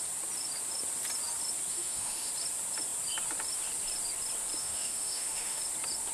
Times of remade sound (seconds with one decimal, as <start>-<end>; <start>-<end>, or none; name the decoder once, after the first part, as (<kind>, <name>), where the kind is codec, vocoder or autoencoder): 1.7-2.3 (autoencoder, DAC-VAE); 4.6-5.6